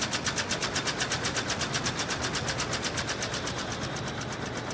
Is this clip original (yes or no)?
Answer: yes